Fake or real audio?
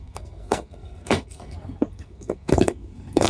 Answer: fake